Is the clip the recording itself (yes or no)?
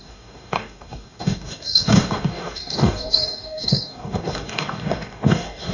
no